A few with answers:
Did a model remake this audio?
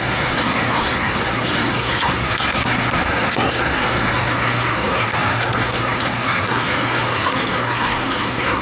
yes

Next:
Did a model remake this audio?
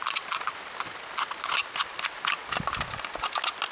no